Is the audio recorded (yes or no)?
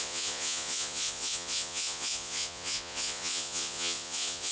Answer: no